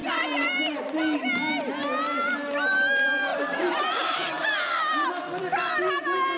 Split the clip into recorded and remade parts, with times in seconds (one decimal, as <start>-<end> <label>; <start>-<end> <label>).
0.0-1.3 remade; 1.3-3.3 recorded; 3.3-4.6 remade; 4.6-6.4 recorded